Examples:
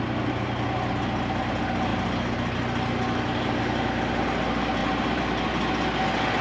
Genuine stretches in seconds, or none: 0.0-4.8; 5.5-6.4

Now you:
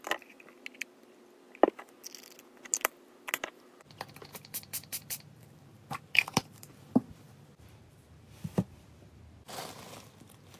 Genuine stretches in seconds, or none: 0.0-4.3; 9.2-10.6

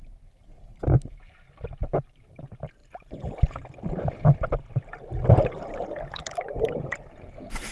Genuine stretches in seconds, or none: 0.0-1.8; 2.4-7.7